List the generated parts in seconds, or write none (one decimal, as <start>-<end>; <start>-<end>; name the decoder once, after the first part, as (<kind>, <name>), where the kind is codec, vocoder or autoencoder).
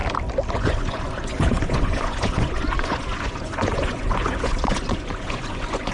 0.5-5.9 (vocoder, Vocos)